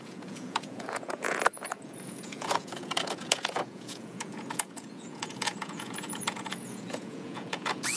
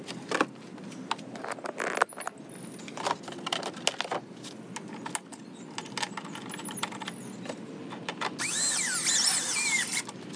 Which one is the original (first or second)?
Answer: second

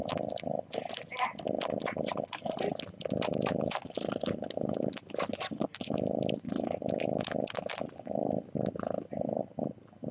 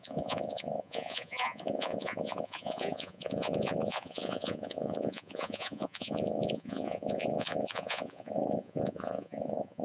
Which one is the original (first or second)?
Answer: first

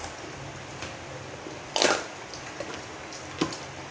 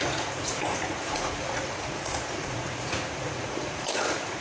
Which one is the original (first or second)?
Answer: first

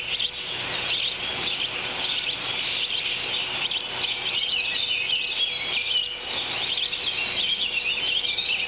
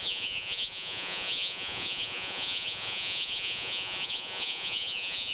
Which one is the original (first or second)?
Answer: first